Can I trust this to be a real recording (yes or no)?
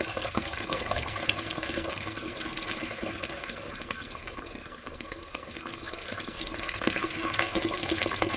no